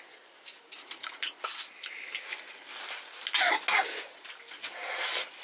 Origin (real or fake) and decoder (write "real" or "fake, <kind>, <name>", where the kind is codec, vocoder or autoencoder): real